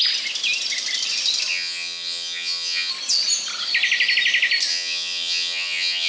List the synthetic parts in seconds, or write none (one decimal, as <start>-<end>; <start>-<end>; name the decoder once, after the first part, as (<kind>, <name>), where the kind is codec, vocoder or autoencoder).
1.5-2.9 (vocoder, HiFi-GAN); 4.7-6.1